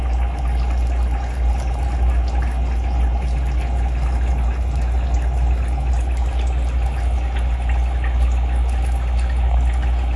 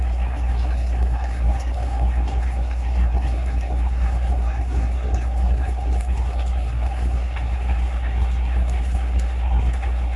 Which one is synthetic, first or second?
second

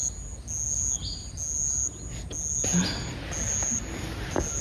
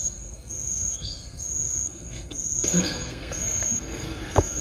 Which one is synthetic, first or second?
second